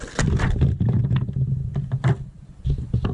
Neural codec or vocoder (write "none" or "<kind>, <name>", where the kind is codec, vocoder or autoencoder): none